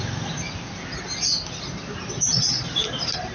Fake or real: real